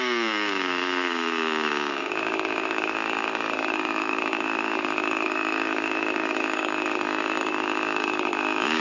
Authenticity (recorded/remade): remade